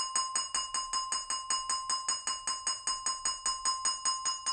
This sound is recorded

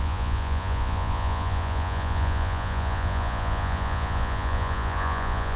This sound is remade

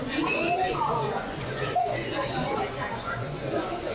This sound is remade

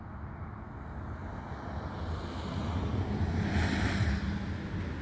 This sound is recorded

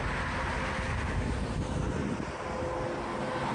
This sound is recorded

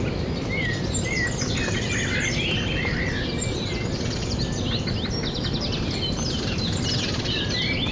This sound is recorded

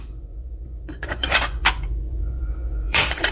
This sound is remade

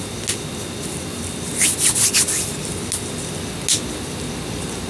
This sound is recorded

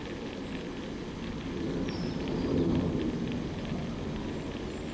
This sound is recorded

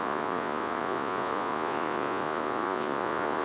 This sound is remade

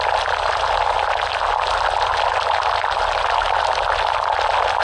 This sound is recorded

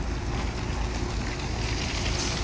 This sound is recorded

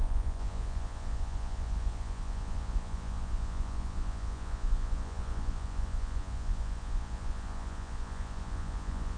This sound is remade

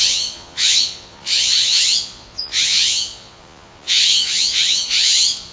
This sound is remade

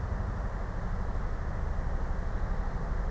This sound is recorded